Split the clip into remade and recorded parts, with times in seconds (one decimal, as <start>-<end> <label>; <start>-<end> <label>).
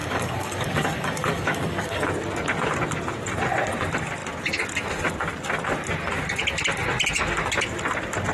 0.0-2.1 remade; 2.1-8.3 recorded